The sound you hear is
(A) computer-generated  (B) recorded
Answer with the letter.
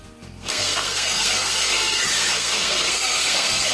A